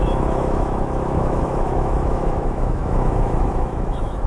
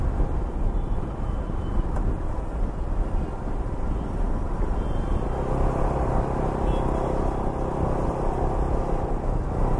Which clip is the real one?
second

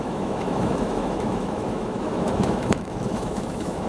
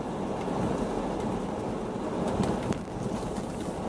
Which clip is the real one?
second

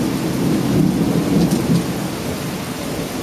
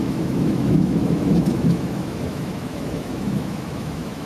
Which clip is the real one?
first